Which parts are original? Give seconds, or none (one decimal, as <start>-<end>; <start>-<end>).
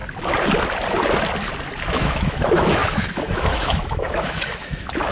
0.0-1.9